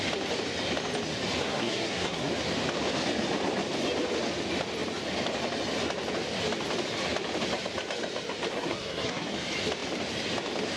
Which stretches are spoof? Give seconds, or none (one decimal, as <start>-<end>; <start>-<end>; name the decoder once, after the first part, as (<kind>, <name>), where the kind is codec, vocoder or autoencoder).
1.4-2.3 (codec, SNAC); 8.5-9.3